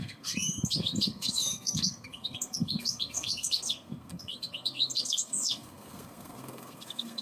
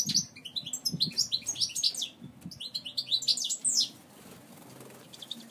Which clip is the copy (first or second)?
first